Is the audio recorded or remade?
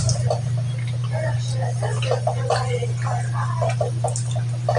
recorded